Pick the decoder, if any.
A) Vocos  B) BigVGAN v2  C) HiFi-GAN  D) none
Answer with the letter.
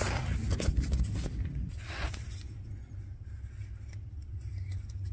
D